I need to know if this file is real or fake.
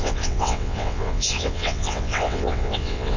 fake